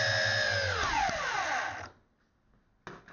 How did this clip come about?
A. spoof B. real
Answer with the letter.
B